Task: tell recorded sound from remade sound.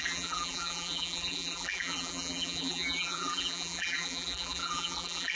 remade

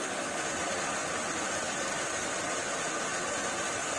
recorded